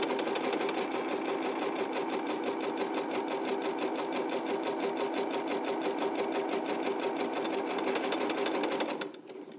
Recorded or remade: recorded